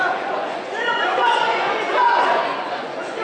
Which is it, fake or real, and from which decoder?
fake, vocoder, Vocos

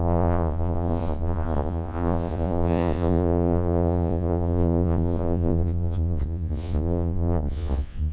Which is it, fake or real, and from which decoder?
fake, vocoder, Vocos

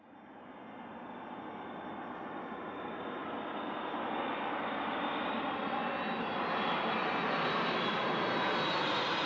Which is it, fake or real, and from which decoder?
real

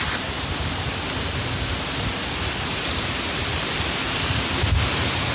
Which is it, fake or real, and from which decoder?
real